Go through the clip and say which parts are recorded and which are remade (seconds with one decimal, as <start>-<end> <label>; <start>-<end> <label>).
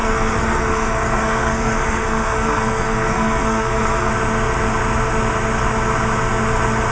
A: 0.0-4.1 remade; 4.1-6.9 recorded